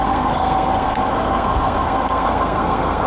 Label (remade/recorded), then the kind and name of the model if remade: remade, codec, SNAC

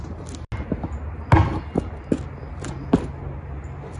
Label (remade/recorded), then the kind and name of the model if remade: recorded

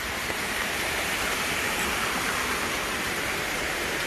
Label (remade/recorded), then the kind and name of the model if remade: remade, vocoder, BigVGAN v2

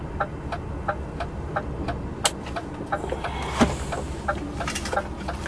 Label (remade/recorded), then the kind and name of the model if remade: recorded